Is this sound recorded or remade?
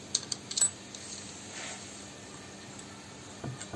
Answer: recorded